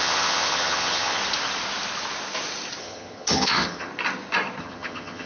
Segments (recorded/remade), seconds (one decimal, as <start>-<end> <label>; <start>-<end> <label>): 0.0-1.2 remade; 1.2-2.8 recorded; 2.8-3.9 remade; 3.9-4.6 recorded; 4.6-5.3 remade